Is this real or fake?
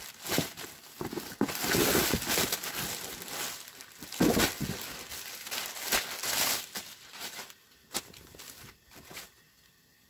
real